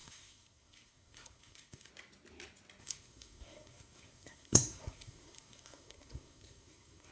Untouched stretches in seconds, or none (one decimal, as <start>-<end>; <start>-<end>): 1.9-2.8